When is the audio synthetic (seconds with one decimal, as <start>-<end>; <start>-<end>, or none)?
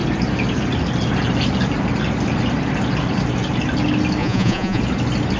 4.2-4.8